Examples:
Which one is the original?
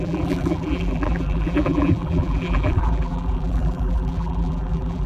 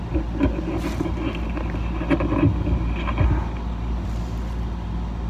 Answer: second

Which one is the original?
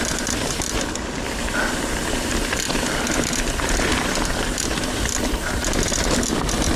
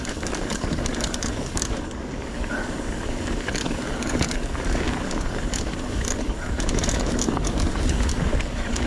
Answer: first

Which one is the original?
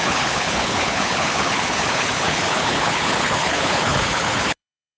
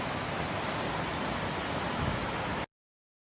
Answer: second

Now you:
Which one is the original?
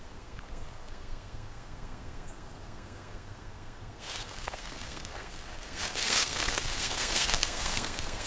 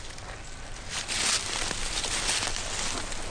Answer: second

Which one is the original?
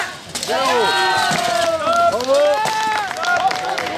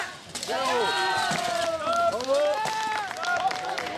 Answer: first